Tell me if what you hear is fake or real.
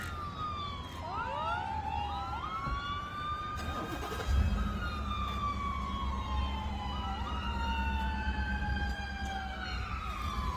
real